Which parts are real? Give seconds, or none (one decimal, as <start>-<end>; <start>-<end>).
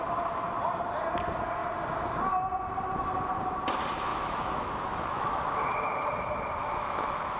0.0-4.1; 5.7-6.6